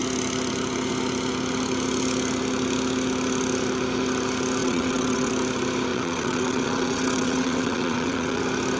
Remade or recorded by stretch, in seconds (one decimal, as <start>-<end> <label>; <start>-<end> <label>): 0.0-4.6 recorded; 4.6-5.3 remade; 5.3-5.9 recorded; 5.9-8.4 remade; 8.4-8.8 recorded